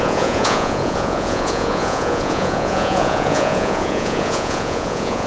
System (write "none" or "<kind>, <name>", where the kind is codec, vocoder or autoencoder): vocoder, Vocos